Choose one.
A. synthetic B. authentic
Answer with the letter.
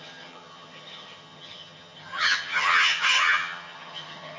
A